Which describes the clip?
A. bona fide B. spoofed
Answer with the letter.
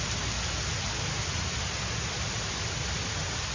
A